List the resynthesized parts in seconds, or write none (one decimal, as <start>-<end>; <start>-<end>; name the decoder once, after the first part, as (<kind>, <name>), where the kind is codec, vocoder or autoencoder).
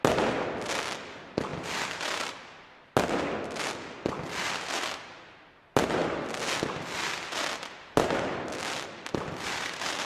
none